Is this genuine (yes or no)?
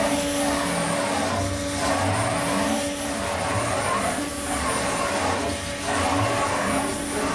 yes